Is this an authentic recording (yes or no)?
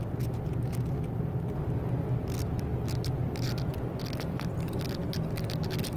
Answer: yes